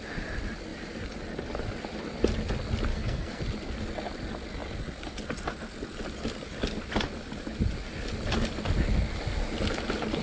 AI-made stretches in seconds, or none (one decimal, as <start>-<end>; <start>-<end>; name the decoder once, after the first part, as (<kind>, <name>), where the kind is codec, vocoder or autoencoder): 2.9-3.4 (codec, SNAC)